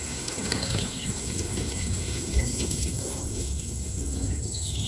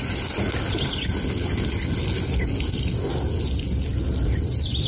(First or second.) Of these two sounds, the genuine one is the second